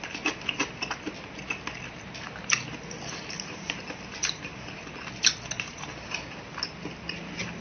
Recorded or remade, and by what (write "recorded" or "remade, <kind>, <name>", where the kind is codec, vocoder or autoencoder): recorded